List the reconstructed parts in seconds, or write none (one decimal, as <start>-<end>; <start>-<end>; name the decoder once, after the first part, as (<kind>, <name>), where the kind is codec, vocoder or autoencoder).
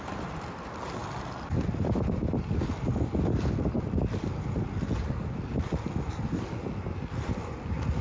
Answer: none